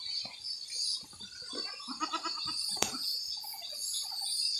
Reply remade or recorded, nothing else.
recorded